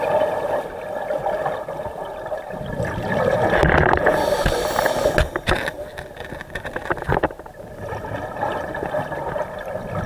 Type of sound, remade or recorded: recorded